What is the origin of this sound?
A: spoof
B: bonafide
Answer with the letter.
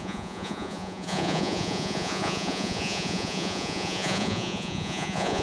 A